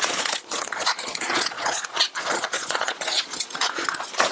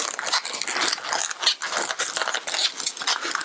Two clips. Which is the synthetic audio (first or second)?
first